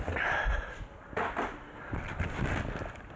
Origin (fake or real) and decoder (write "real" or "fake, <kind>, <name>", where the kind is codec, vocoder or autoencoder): real